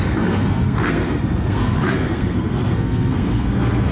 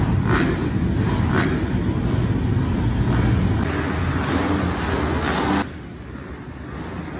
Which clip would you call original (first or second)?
second